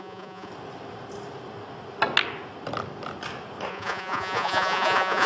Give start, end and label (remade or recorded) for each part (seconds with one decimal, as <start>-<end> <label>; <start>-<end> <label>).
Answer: 0.0-0.5 remade; 0.5-3.7 recorded; 3.7-5.3 remade